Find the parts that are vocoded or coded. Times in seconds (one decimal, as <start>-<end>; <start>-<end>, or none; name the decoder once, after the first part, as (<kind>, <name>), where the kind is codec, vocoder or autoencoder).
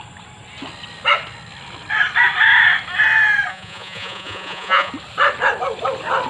3.5-4.9 (vocoder, Vocos)